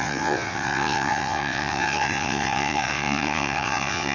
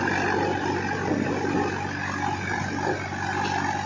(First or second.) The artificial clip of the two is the first